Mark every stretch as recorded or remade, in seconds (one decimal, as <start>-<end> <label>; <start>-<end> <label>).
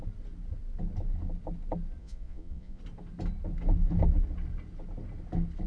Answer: 0.0-2.0 recorded; 2.0-2.8 remade; 2.8-5.7 recorded